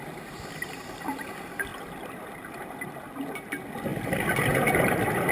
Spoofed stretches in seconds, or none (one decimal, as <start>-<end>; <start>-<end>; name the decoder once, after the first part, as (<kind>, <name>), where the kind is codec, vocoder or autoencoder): none

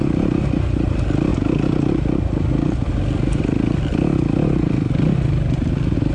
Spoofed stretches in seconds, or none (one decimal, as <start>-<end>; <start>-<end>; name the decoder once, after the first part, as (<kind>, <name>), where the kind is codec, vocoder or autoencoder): none

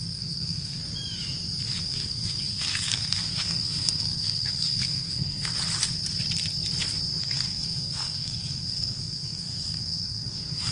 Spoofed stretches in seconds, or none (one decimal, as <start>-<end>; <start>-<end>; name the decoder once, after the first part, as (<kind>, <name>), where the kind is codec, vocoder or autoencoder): 0.0-0.8 (codec, SNAC); 1.8-5.5; 7.2-10.7

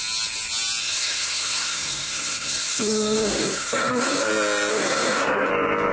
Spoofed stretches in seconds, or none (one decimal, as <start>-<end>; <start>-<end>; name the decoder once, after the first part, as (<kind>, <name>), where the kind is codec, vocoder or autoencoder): 0.8-4.3 (codec, SNAC); 4.7-5.5

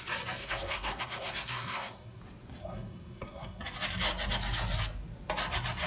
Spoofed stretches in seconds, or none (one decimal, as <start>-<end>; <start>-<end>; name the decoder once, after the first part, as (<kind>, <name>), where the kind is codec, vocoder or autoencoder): 0.4-2.2 (codec, SNAC); 2.6-3.6

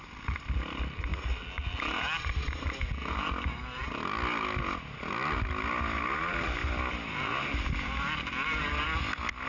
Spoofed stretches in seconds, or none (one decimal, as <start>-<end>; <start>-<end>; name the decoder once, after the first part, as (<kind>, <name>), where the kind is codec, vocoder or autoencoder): none

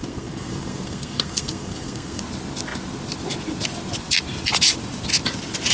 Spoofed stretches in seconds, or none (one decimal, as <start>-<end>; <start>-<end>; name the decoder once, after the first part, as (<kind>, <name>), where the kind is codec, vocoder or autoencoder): 0.0-2.2 (codec, SNAC)